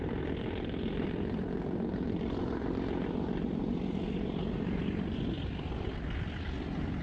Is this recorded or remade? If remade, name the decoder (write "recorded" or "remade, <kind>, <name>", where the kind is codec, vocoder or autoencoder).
recorded